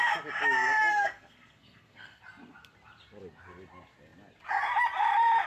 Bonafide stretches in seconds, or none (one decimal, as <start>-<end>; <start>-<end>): 0.0-0.9; 2.2-5.5